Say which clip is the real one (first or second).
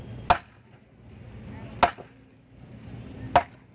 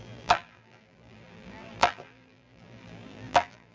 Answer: first